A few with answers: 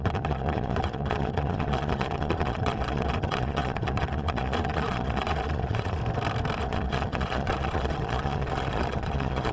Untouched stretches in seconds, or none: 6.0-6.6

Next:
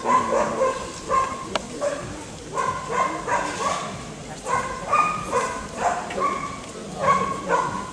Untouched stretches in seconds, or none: 0.0-7.9

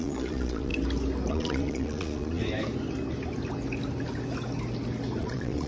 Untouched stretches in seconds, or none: 0.7-1.3; 2.4-5.2

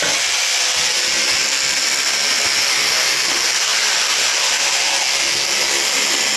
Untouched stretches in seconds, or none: 0.0-6.4